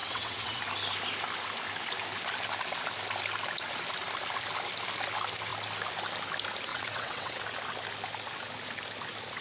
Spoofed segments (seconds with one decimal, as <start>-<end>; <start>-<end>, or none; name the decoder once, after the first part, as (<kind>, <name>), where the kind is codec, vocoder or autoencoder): 0.0-0.6 (vocoder, WaveNeXt); 6.7-7.4